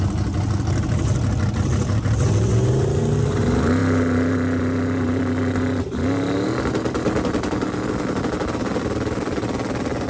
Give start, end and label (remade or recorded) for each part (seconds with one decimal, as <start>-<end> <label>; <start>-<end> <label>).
0.0-10.1 recorded